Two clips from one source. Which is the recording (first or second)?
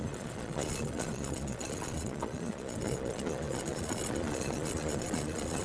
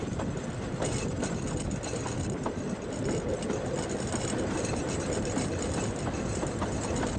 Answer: second